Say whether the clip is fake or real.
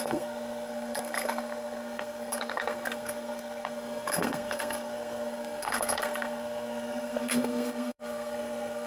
fake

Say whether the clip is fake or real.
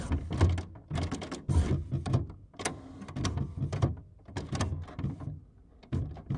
real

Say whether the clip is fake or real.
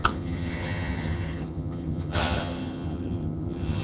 fake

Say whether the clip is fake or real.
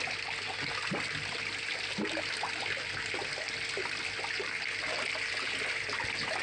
real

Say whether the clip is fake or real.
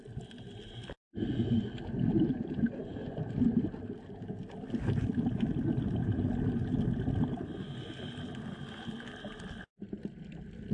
real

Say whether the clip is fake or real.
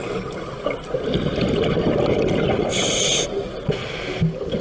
real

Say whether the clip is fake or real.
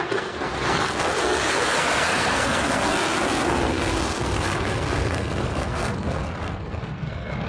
fake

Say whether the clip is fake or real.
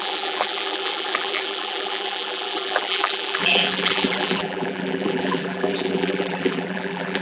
fake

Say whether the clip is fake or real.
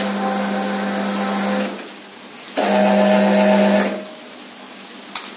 real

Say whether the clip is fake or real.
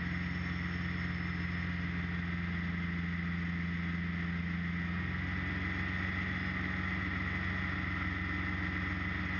real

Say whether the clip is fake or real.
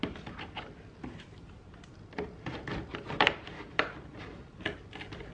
real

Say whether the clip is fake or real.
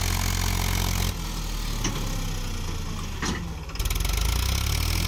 real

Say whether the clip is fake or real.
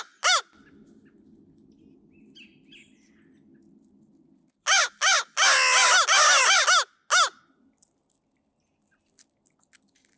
real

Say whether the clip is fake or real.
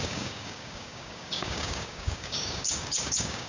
fake